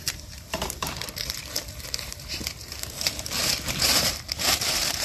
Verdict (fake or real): fake